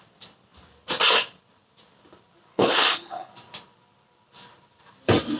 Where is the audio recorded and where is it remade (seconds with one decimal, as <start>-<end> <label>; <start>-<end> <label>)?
0.0-2.5 recorded; 2.5-3.3 remade; 3.3-5.4 recorded